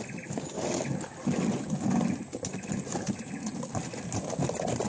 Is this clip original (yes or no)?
yes